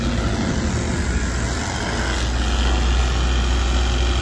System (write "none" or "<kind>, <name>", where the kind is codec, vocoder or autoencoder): none